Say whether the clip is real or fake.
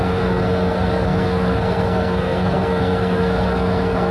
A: fake